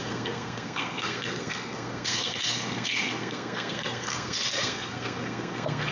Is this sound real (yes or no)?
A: no